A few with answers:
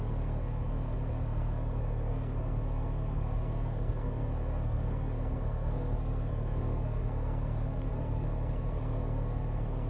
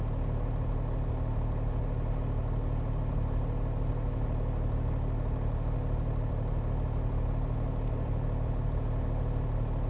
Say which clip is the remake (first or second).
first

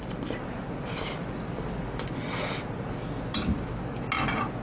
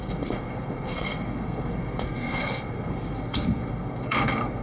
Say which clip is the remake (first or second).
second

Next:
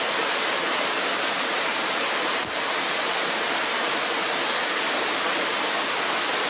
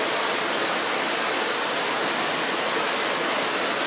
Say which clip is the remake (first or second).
first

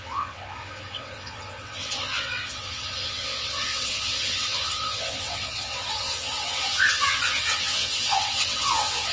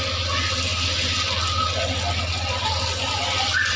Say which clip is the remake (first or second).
first